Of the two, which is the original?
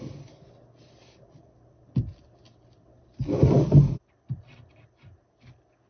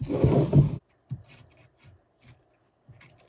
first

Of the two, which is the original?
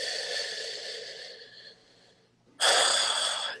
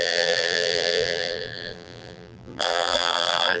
first